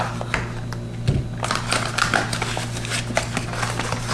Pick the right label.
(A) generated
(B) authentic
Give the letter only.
B